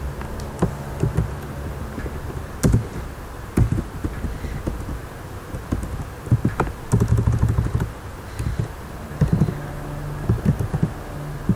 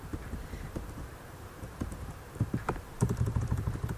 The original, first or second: first